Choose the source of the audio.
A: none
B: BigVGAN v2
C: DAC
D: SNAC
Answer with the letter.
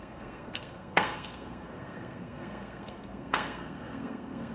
D